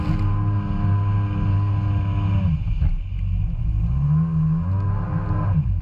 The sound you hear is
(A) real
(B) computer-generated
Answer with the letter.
A